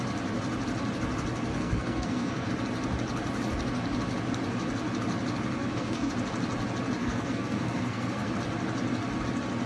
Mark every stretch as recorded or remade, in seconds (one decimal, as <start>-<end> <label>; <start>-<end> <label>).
0.0-1.5 recorded; 1.5-2.5 remade; 2.5-5.6 recorded; 5.6-6.1 remade; 6.1-7.0 recorded; 7.0-8.3 remade; 8.3-9.7 recorded